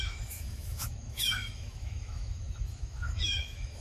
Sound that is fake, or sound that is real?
fake